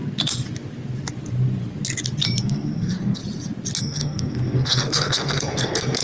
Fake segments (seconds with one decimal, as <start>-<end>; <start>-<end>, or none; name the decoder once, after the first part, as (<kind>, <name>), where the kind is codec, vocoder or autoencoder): 2.4-3.2 (codec, SNAC); 3.8-6.0